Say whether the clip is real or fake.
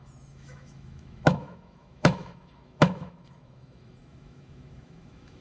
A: fake